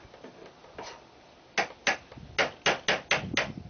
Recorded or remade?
recorded